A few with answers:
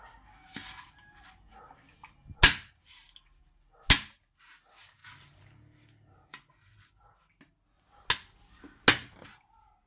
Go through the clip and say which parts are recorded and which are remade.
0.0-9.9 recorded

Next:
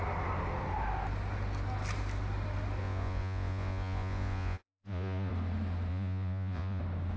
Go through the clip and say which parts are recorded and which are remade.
0.0-2.8 recorded; 2.8-5.3 remade; 5.3-5.9 recorded; 5.9-6.8 remade; 6.8-7.2 recorded